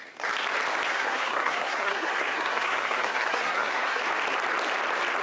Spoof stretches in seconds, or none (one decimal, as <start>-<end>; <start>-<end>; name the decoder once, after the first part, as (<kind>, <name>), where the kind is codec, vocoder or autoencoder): 0.9-4.0 (codec, SNAC)